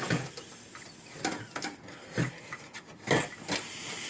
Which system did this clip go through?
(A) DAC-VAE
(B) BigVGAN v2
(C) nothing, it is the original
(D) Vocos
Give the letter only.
C